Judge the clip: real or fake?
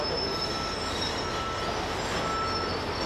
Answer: real